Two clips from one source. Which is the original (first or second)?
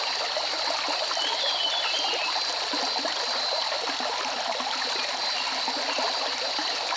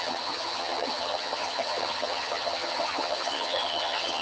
first